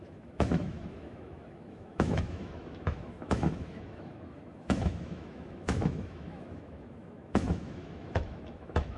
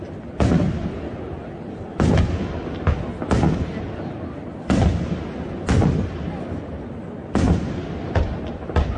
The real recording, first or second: second